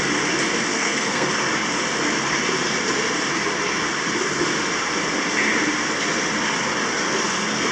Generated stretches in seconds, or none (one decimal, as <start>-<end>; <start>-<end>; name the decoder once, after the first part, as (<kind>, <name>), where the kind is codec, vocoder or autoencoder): 0.7-1.3 (codec, SNAC)